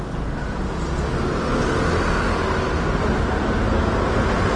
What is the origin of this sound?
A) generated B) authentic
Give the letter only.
B